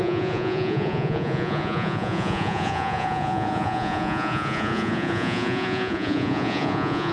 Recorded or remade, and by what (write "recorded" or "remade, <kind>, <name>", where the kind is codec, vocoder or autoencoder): remade, vocoder, Vocos